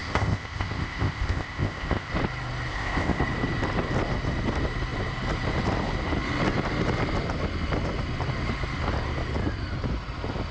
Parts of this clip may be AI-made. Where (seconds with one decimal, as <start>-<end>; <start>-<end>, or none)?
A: 0.0-2.1; 2.7-3.2